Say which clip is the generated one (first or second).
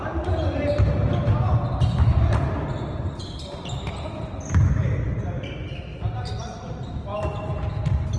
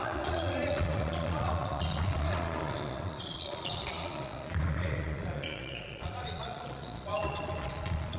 second